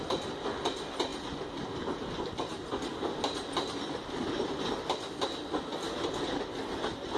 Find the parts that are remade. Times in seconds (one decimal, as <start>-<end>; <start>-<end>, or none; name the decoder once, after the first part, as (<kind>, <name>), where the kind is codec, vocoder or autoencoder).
none